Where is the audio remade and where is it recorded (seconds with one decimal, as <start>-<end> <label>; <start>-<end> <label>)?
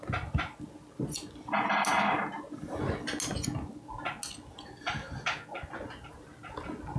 0.0-7.0 recorded